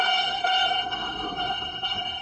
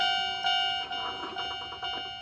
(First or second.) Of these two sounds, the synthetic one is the first